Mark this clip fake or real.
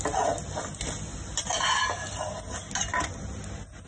real